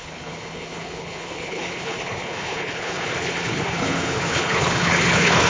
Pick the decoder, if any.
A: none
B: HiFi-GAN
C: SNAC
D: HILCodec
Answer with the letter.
D